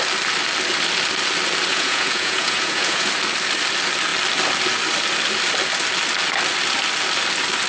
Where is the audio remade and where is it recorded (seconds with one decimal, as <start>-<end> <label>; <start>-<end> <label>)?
0.0-1.7 recorded; 1.7-3.1 remade; 3.1-7.7 recorded